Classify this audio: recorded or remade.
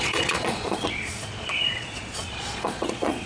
remade